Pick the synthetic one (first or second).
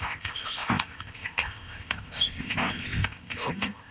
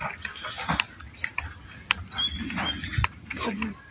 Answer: first